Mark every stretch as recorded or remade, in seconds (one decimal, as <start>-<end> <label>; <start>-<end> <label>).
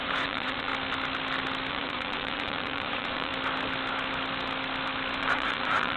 0.0-0.7 remade; 0.7-1.7 recorded; 1.7-3.3 remade; 3.3-5.2 recorded; 5.2-6.0 remade